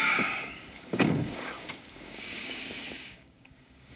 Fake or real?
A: fake